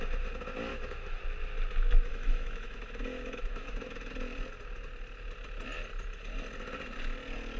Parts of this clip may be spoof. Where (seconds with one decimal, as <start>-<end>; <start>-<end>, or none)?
0.7-1.2; 2.1-4.1